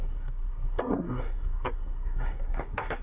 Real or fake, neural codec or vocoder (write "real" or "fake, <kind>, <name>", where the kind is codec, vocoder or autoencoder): fake, codec, SNAC